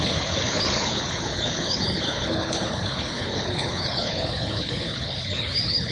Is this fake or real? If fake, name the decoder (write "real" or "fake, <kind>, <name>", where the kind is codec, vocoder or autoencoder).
fake, codec, HILCodec